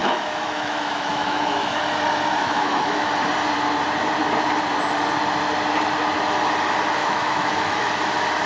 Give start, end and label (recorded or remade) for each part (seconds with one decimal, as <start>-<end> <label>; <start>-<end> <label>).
0.0-1.8 remade; 1.8-2.4 recorded; 2.4-3.1 remade; 3.1-7.0 recorded; 7.0-7.9 remade; 7.9-8.5 recorded